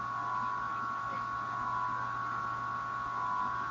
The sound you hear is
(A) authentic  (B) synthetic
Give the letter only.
A